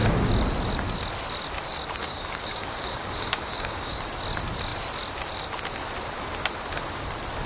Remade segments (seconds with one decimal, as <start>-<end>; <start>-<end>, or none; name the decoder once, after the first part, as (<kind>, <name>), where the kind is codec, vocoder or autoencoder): 2.0-4.0 (codec, DAC)